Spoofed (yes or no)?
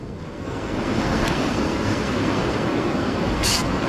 yes